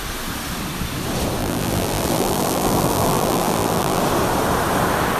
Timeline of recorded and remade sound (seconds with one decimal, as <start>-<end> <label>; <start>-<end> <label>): 0.0-1.4 recorded; 1.4-4.0 remade; 4.0-5.2 recorded